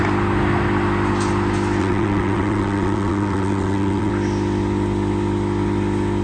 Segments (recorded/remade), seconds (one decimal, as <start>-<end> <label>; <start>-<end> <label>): 0.0-1.8 recorded; 1.8-4.1 remade; 4.1-6.2 recorded